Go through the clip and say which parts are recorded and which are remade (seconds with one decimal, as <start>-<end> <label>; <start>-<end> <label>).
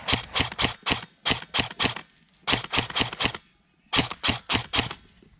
0.0-4.0 recorded; 4.0-4.6 remade; 4.6-5.4 recorded